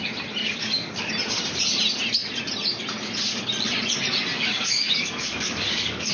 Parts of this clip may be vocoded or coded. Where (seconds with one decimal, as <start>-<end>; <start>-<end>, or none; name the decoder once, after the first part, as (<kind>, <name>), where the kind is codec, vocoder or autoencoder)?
0.4-1.1 (codec, DAC); 4.3-6.1